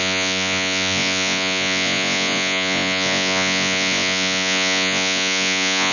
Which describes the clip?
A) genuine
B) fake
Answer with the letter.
B